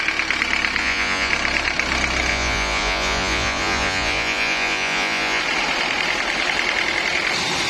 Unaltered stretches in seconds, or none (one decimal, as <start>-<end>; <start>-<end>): 0.0-0.8; 1.3-2.3; 5.4-7.7